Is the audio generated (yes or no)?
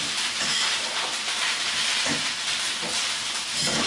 yes